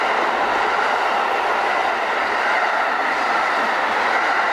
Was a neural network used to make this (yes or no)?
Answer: no